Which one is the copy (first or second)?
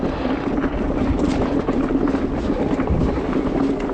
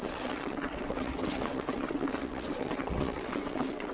second